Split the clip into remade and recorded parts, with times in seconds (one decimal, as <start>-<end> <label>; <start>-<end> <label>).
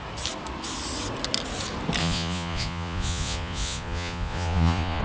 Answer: 0.0-2.0 recorded; 2.0-5.0 remade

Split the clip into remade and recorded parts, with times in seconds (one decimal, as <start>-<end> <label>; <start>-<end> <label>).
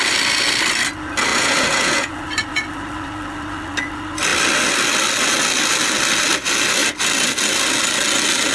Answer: 0.0-1.3 recorded; 1.3-2.1 remade; 2.1-8.5 recorded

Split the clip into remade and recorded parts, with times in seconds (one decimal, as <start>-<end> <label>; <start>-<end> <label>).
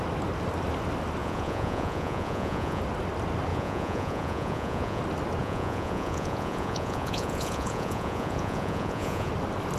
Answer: 0.0-1.2 recorded; 1.2-2.8 remade; 2.8-3.5 recorded; 3.5-5.0 remade; 5.0-5.4 recorded; 5.4-9.3 remade; 9.3-9.8 recorded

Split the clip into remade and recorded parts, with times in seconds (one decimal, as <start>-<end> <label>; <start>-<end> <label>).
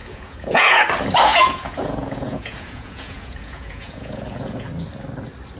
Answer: 0.0-0.8 remade; 0.8-1.3 recorded; 1.3-4.7 remade; 4.7-5.6 recorded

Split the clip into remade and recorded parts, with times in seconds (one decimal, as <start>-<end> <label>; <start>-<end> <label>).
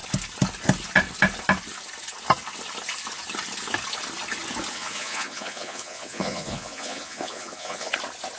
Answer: 0.0-4.7 recorded; 4.7-7.9 remade; 7.9-8.4 recorded